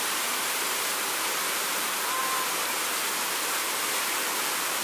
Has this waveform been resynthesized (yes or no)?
no